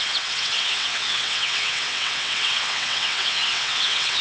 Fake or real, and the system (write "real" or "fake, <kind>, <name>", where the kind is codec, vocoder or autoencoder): fake, vocoder, WaveNeXt